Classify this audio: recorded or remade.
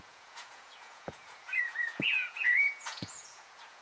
remade